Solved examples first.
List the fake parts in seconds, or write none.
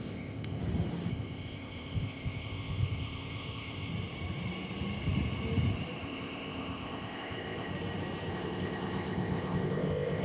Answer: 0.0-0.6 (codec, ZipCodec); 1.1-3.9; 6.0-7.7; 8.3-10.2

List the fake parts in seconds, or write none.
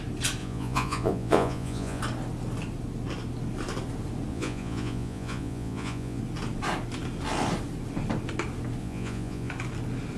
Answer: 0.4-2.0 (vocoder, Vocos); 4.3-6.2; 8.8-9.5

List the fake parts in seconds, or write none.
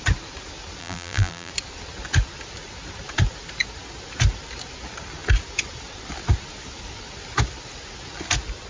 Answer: 0.8-1.5 (vocoder, BigVGAN v2)